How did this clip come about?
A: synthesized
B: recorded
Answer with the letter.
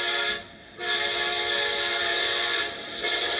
B